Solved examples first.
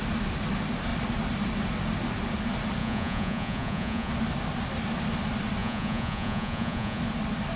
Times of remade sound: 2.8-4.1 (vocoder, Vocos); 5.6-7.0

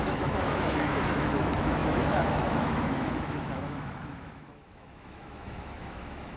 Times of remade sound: 0.0-6.4 (autoencoder, DAC-VAE)

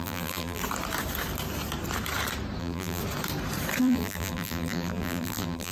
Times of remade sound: 0.0-0.6 (vocoder, BigVGAN v2); 2.6-3.0; 3.8-5.7

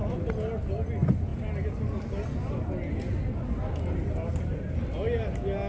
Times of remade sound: none

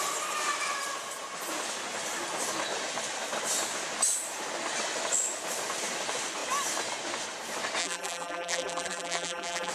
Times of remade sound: 7.8-9.7 (vocoder, BigVGAN v2)